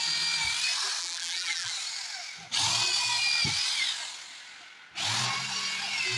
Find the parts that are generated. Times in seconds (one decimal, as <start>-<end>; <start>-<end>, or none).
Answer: 1.0-1.7